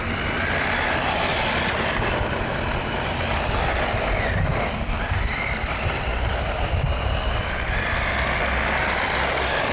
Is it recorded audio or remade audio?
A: recorded